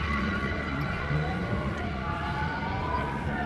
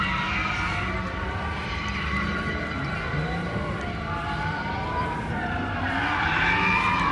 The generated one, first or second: first